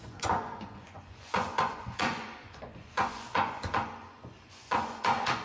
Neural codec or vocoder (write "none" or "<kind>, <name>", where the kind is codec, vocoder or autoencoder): vocoder, Vocos